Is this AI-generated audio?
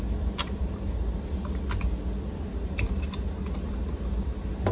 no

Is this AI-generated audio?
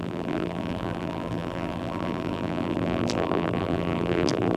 yes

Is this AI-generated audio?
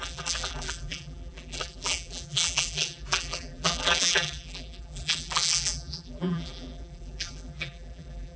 yes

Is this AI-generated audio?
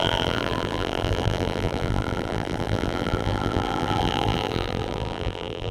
yes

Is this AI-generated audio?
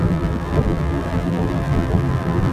yes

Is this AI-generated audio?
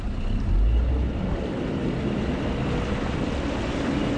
no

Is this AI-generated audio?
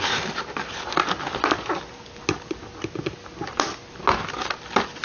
no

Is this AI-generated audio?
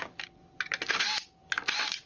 no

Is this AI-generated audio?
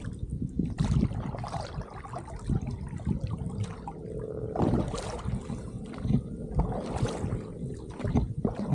no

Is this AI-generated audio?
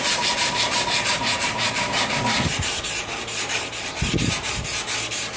yes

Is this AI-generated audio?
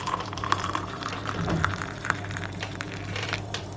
yes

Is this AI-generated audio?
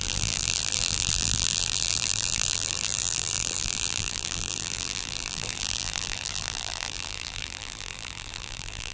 yes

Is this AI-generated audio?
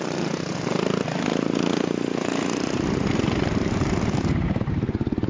no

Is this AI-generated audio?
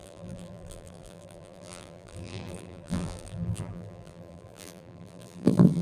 yes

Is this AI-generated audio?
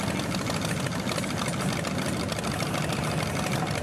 no